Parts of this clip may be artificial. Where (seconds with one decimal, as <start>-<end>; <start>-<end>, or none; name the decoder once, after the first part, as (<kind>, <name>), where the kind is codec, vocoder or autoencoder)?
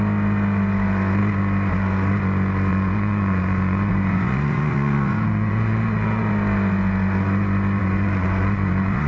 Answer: 2.7-6.3 (vocoder, Vocos); 7.8-9.1